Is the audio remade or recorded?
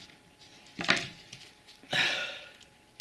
recorded